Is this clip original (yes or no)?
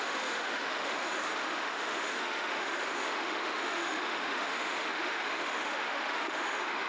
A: no